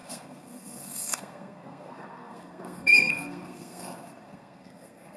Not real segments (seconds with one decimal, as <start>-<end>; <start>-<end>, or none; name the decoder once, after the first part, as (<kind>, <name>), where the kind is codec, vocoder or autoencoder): 0.0-5.2 (codec, SNAC)